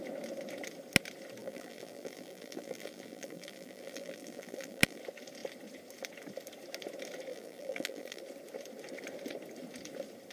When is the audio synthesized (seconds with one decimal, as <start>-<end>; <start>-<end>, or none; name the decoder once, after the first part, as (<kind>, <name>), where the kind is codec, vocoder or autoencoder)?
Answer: 1.4-5.0 (vocoder, BigVGAN v2); 7.3-8.2